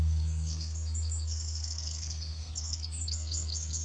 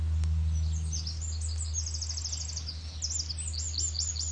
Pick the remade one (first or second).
first